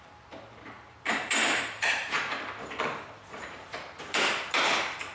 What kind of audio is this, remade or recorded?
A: remade